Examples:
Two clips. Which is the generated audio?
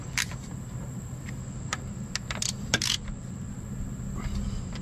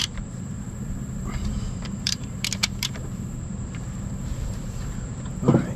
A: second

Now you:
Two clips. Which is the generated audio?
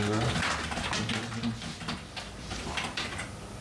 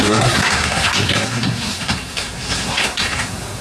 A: second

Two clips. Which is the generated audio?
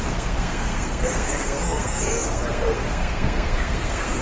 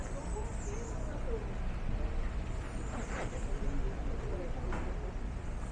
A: first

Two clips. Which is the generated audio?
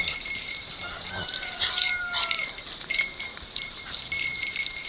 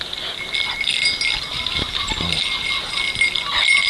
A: first